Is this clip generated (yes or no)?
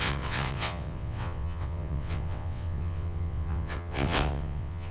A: yes